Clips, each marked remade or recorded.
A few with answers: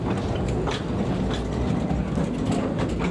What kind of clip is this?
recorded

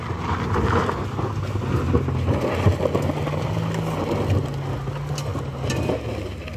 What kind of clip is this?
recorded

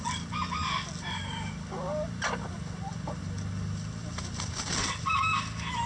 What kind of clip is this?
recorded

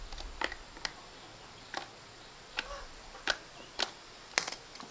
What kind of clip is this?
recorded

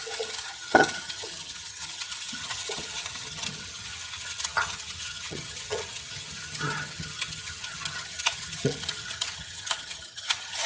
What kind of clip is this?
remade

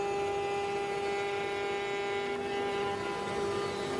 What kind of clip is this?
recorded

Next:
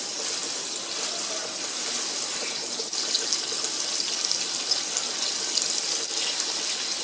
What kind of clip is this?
recorded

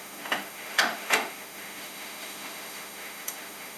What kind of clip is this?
remade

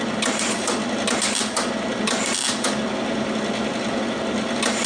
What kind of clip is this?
recorded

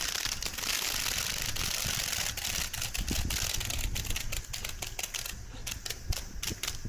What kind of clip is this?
recorded